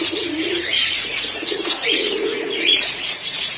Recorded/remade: remade